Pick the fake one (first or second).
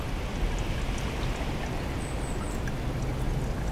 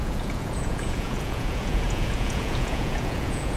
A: second